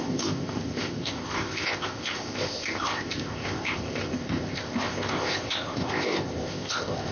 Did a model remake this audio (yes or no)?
yes